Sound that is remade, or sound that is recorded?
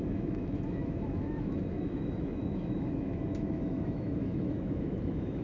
remade